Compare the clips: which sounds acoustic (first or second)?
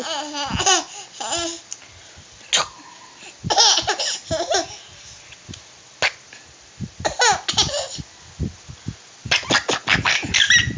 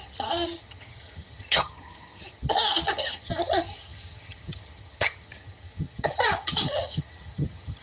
first